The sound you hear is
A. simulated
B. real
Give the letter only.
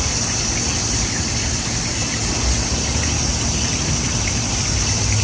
B